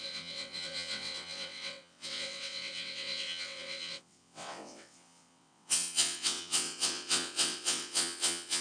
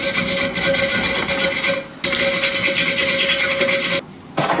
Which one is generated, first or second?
first